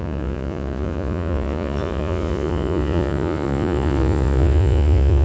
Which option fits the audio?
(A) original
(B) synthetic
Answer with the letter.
B